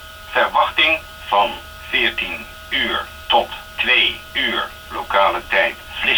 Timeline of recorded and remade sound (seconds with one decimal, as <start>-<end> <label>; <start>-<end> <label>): 0.0-6.2 recorded